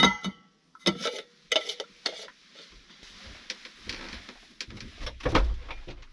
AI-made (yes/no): no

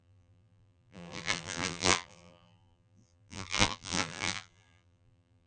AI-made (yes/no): yes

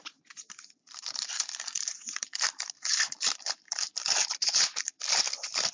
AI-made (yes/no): yes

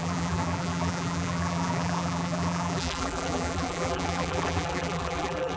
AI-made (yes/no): yes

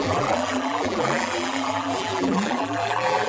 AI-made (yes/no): yes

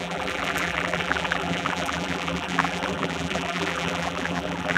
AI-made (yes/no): yes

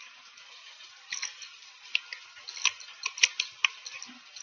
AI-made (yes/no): no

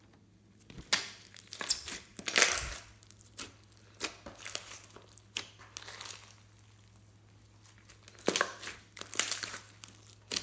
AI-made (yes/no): no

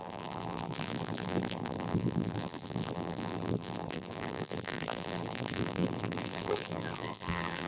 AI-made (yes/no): yes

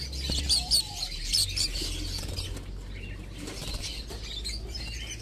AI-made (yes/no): yes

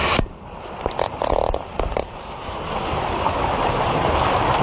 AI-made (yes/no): yes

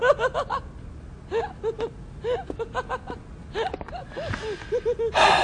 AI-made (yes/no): no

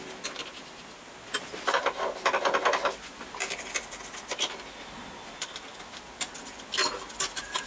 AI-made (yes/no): yes